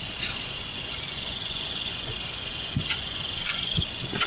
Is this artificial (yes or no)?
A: yes